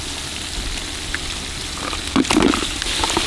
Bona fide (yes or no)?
yes